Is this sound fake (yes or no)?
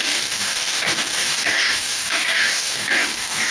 yes